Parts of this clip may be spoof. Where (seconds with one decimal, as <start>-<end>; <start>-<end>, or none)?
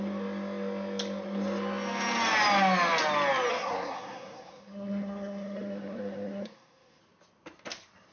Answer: 3.5-7.0